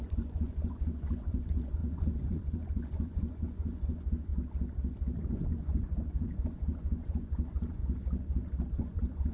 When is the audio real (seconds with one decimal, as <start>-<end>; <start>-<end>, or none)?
4.3-5.3; 7.8-8.7